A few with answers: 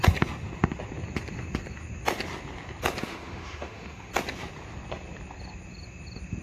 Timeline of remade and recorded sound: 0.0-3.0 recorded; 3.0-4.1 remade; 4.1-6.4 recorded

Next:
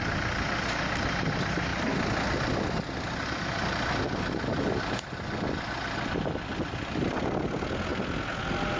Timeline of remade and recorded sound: 0.0-8.8 recorded

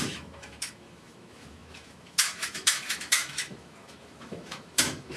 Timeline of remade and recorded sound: 0.0-5.2 remade

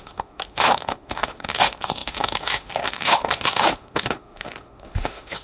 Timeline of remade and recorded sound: 0.0-5.4 remade

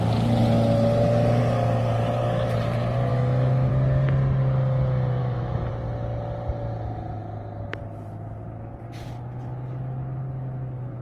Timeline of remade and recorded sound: 0.0-3.1 recorded; 3.1-3.7 remade; 3.7-5.2 recorded; 5.2-5.7 remade; 5.7-11.0 recorded

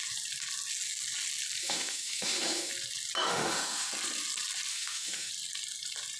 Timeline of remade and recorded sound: 0.0-1.6 recorded; 1.6-2.7 remade; 2.7-3.2 recorded; 3.2-3.9 remade; 3.9-4.7 recorded; 4.7-5.3 remade; 5.3-6.2 recorded

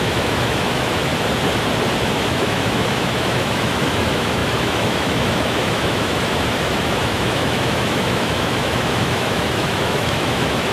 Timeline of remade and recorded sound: 0.0-1.1 remade; 1.1-2.1 recorded; 2.1-10.7 remade